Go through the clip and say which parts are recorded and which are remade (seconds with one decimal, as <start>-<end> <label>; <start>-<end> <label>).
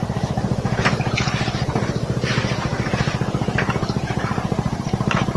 0.0-2.7 remade; 2.7-3.3 recorded; 3.3-5.4 remade